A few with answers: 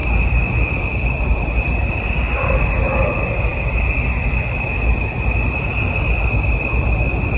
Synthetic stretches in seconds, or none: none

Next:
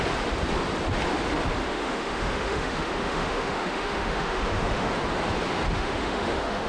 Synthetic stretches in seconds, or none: 1.6-4.9 (autoencoder, DAC-VAE); 5.7-6.7